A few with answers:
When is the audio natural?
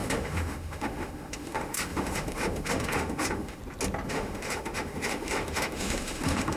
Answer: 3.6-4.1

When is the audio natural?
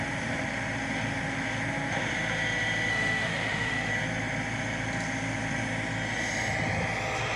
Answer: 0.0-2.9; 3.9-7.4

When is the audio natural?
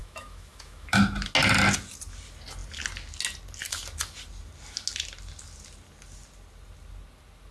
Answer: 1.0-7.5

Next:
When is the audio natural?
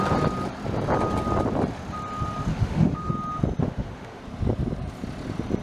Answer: 0.0-2.5; 3.1-3.6; 4.2-5.6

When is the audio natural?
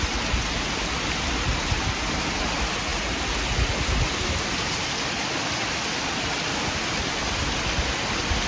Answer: 0.0-8.5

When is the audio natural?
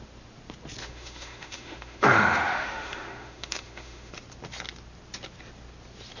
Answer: 0.0-0.8; 4.1-6.2